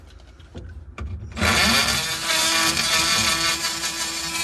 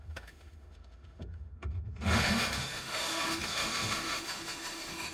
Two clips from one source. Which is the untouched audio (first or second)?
first